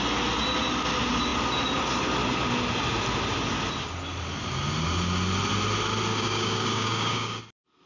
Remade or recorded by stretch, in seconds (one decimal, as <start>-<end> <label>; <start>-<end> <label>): 0.0-6.1 recorded; 6.1-7.4 remade; 7.4-7.9 recorded